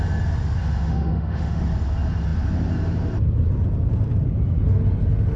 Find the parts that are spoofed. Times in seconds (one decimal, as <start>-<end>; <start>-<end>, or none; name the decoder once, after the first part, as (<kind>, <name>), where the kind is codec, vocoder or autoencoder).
0.6-1.6 (autoencoder, DAC-VAE)